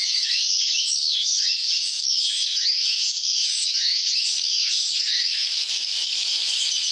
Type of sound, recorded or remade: remade